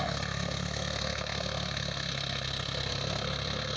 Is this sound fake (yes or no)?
yes